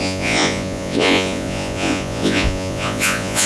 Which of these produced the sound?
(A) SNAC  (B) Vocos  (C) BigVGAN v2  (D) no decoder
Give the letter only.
B